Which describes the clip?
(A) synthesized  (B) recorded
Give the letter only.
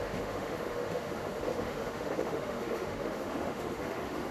A